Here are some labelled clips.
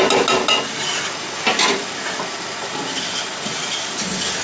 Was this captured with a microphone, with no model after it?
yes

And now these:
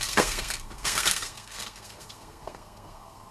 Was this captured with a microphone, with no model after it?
no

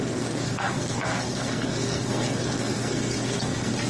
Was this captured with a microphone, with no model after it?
no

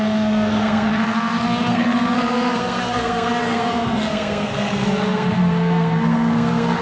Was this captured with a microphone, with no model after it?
no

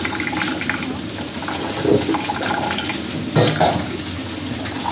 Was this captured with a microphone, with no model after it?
yes